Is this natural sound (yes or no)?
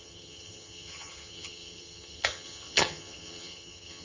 no